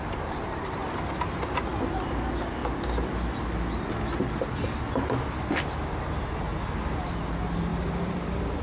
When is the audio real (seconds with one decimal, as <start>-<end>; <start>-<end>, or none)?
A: 0.0-0.8; 1.7-6.5; 7.1-7.7